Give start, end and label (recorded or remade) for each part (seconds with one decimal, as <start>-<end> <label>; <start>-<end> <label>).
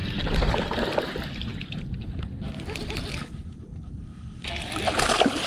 0.0-5.5 recorded